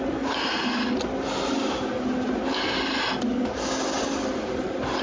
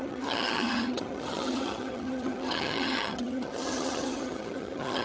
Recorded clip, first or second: first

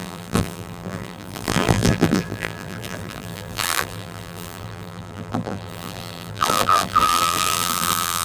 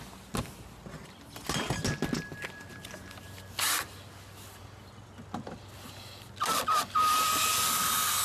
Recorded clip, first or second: second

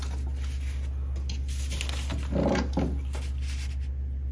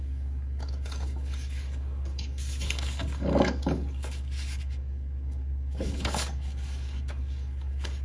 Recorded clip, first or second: first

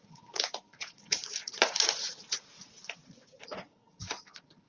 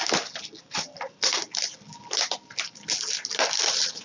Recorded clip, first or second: second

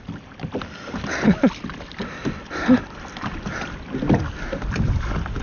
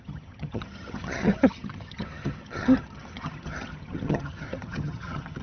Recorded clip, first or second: first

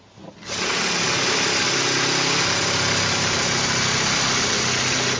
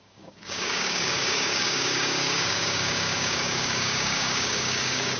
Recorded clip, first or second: first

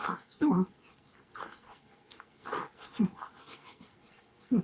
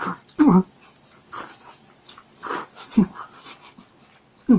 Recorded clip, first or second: second